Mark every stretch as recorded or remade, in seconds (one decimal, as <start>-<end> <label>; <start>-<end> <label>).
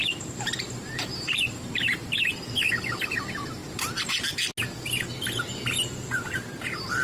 0.0-2.3 remade; 2.3-7.0 recorded